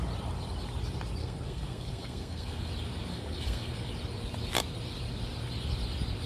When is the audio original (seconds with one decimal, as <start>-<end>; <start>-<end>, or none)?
0.0-1.2; 2.7-3.1; 3.9-6.3